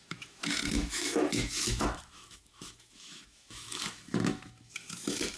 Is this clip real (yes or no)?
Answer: no